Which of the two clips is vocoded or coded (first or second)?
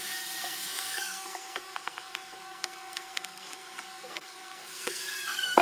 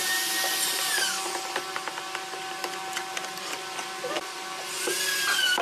first